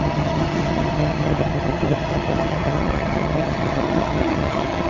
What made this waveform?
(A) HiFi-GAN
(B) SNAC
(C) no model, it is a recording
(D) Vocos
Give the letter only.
A